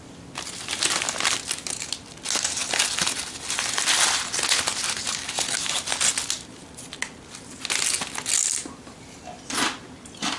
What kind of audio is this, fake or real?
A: real